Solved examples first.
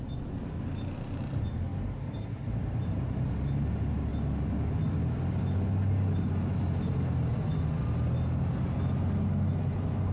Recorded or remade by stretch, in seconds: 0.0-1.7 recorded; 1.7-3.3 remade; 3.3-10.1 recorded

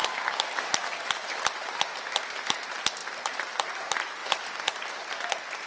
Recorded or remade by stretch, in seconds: 0.0-0.6 remade; 0.6-3.0 recorded; 3.0-3.7 remade; 3.7-5.7 recorded

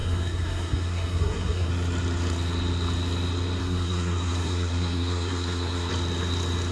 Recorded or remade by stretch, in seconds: 0.0-1.7 remade; 1.7-3.6 recorded; 3.6-5.9 remade; 5.9-6.7 recorded